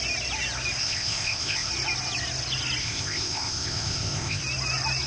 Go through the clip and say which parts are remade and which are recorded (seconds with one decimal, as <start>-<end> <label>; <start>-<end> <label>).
0.0-0.8 recorded; 0.8-1.7 remade; 1.7-2.8 recorded; 2.8-4.4 remade; 4.4-5.1 recorded